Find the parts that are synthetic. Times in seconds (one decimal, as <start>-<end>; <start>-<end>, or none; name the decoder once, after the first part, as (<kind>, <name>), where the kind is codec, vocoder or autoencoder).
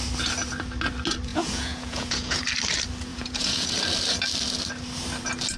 1.3-2.4 (vocoder, Vocos); 3.1-3.7